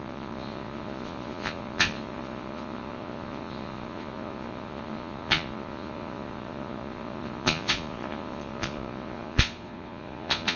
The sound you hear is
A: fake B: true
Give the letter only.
A